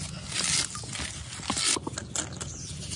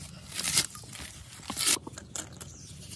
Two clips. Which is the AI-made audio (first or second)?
second